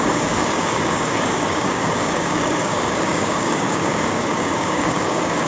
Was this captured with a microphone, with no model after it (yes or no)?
no